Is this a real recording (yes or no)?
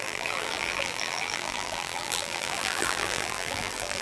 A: no